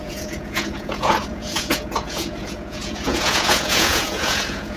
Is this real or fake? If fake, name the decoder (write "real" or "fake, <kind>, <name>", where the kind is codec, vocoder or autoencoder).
fake, vocoder, Vocos